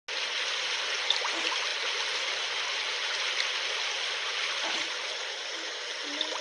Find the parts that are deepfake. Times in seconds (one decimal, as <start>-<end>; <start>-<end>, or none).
none